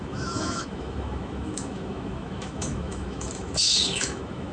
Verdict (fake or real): fake